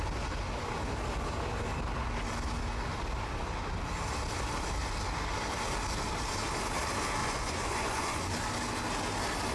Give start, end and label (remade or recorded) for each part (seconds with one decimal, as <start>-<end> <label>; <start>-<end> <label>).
0.0-7.2 recorded; 7.2-8.2 remade; 8.2-9.5 recorded